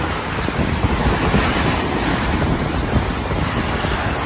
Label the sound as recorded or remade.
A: recorded